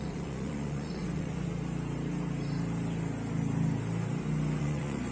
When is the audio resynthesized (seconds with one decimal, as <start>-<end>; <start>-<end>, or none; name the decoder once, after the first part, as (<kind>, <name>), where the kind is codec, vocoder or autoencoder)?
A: 0.0-1.5 (vocoder, Vocos); 4.6-5.1